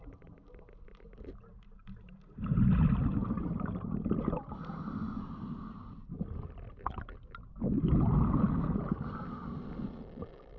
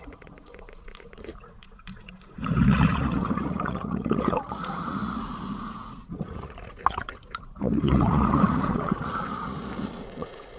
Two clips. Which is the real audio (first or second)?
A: first